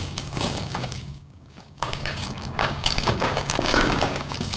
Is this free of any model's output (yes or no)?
no